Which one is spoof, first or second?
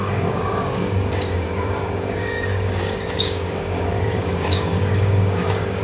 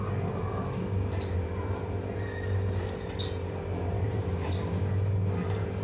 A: first